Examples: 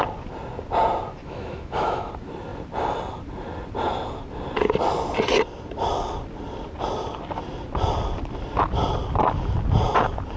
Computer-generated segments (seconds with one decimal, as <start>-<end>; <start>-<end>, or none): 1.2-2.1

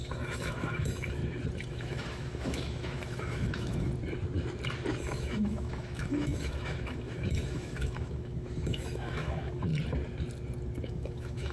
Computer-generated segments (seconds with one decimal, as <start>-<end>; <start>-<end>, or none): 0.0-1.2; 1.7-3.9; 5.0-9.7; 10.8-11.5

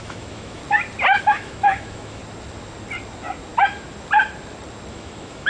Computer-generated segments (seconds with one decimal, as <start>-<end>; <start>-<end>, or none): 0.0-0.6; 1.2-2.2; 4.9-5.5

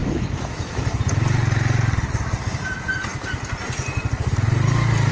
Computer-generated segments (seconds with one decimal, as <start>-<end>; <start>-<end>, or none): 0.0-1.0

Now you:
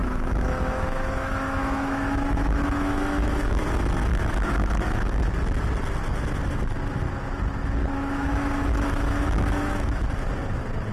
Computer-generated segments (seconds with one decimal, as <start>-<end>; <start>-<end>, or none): 0.0-3.6; 4.1-5.3; 7.8-10.0

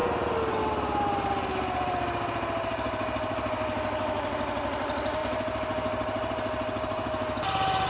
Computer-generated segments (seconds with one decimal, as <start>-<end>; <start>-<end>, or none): none